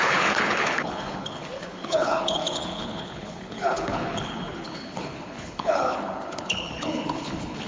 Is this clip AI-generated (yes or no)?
yes